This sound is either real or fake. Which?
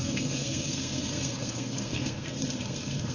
fake